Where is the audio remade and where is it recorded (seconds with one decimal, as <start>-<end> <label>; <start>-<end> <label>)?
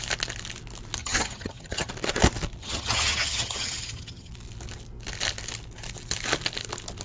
0.0-1.0 recorded; 1.0-1.9 remade; 1.9-2.6 recorded; 2.6-4.3 remade; 4.3-7.0 recorded